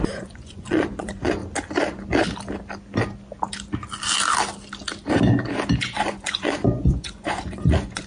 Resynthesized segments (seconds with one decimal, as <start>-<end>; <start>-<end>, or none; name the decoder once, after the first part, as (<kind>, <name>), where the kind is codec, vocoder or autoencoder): 0.0-1.4 (vocoder, Vocos); 5.8-8.1